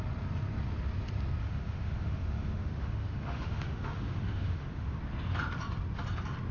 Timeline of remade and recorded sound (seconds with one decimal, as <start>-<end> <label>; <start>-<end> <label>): 0.0-1.4 recorded; 1.4-5.0 remade; 5.0-6.5 recorded